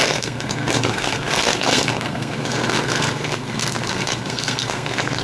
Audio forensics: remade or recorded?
remade